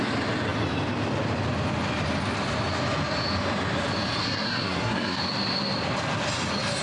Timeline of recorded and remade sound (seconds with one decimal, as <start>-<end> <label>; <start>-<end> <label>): 0.0-4.2 recorded; 4.2-5.2 remade; 5.2-6.8 recorded